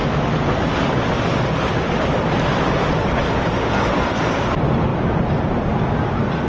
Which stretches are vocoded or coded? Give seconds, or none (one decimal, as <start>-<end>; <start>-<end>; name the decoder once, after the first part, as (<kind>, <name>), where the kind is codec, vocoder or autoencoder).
0.0-6.5 (vocoder, BigVGAN v2)